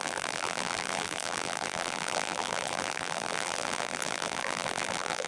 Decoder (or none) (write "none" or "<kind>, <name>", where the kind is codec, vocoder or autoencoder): vocoder, BigVGAN v2